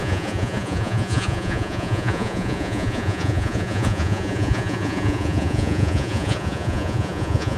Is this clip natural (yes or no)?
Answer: no